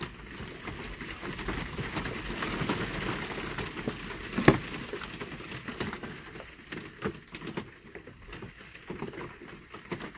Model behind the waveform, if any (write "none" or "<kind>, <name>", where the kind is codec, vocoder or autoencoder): none